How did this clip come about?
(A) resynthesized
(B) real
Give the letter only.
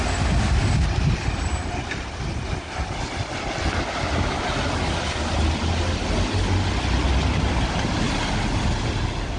B